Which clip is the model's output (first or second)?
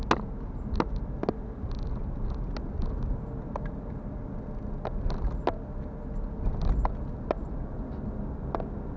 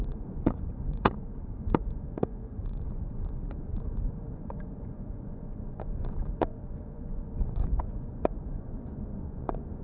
second